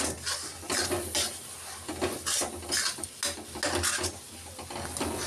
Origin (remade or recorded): recorded